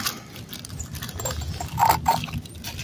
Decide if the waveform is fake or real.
real